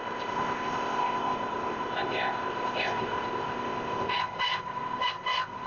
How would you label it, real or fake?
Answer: fake